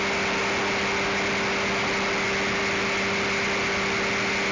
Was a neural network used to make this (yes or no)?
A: no